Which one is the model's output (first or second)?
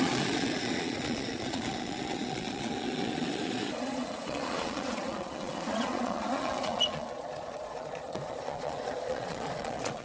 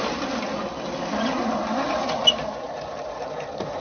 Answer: first